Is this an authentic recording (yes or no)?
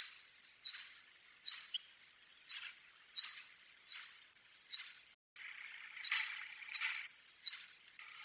yes